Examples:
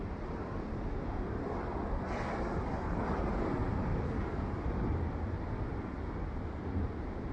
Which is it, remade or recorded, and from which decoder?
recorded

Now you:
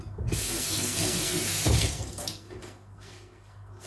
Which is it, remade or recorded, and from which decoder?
remade, codec, SNAC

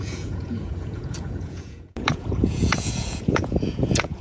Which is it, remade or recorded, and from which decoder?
remade, vocoder, Vocos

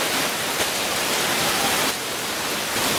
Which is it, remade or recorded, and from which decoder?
recorded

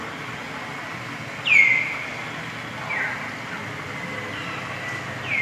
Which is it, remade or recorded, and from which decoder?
recorded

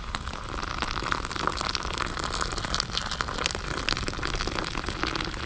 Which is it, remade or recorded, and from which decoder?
recorded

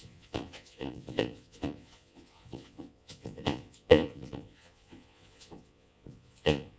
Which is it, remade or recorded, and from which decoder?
remade, vocoder, Vocos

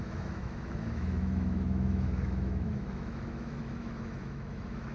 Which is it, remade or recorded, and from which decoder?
remade, autoencoder, DAC-VAE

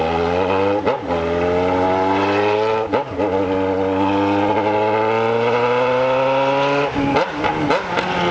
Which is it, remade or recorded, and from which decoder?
recorded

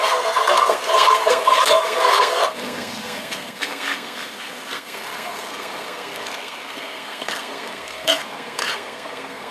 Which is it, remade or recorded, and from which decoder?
remade, codec, SNAC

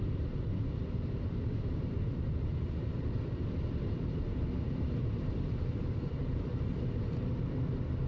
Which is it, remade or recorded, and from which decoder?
remade, vocoder, BigVGAN v2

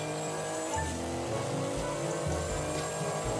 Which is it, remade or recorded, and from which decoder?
recorded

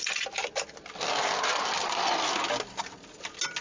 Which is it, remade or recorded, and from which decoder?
recorded